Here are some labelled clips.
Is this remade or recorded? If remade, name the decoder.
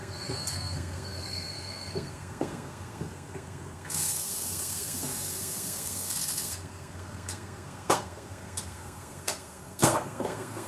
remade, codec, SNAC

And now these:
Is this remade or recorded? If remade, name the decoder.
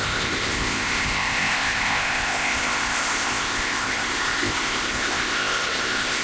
remade, codec, ZipCodec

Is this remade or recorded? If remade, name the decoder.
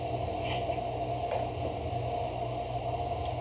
recorded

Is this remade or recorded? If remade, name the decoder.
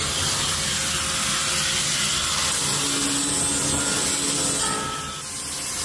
recorded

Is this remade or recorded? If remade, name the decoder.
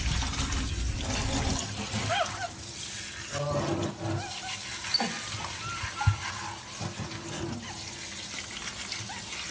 recorded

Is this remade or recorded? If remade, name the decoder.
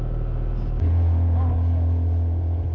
recorded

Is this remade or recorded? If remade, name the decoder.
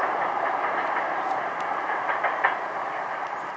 remade, vocoder, BigVGAN v2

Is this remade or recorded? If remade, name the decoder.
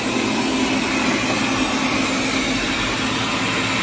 recorded